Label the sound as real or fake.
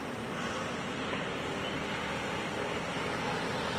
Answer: real